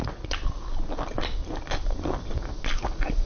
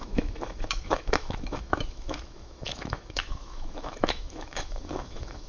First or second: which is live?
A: first